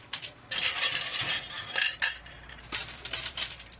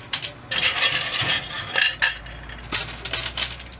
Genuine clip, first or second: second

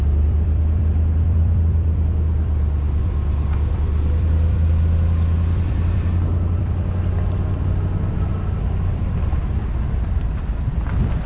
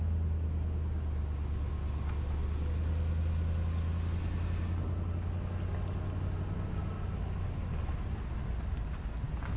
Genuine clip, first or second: second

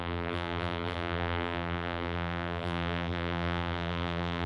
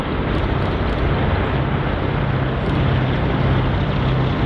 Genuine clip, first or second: second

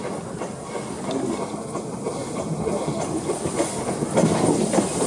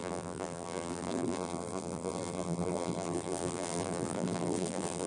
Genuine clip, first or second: first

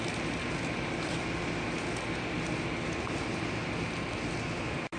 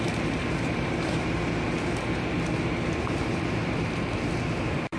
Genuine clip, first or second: first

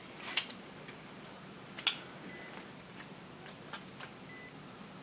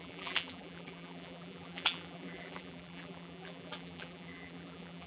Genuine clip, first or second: first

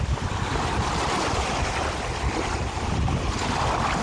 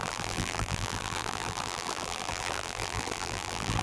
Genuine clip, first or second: first